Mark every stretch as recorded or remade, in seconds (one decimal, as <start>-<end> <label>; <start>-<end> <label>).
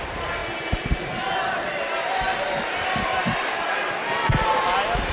0.0-5.1 recorded